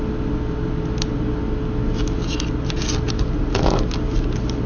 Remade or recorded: recorded